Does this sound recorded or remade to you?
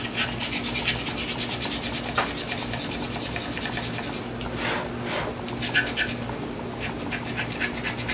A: recorded